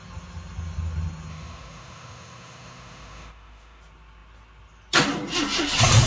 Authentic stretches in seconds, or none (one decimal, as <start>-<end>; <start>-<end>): 0.0-1.3; 3.8-6.1